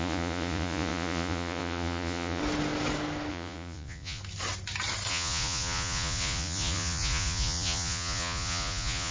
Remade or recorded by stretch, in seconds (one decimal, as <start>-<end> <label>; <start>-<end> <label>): 0.0-2.4 remade; 2.4-3.3 recorded; 3.3-4.2 remade; 4.2-5.1 recorded; 5.1-9.1 remade